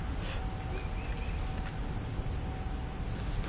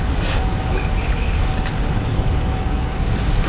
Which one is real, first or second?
first